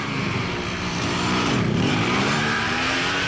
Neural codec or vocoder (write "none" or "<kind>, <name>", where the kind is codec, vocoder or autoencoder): vocoder, BigVGAN v2